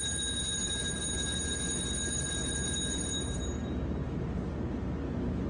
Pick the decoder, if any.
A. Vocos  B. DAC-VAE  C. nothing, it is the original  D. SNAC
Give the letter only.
C